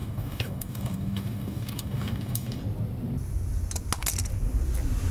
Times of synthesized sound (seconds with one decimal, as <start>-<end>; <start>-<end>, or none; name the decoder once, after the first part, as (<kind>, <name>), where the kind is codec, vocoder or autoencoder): 0.0-2.6 (codec, DAC)